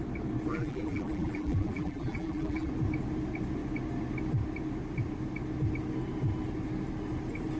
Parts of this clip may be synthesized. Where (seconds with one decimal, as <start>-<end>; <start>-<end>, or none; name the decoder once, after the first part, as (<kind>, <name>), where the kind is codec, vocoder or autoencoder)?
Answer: 0.5-2.7 (vocoder, BigVGAN v2)